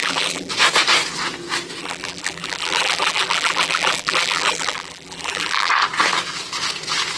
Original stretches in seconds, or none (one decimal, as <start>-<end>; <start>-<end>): 0.5-1.8; 5.7-7.2